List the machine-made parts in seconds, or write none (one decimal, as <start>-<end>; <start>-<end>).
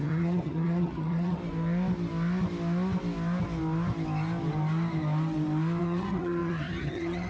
0.0-1.4; 5.8-7.3